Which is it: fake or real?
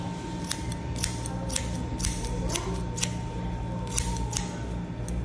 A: real